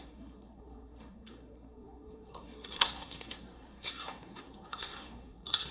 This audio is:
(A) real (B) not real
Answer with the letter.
B